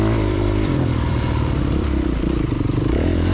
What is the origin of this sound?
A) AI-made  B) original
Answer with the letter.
A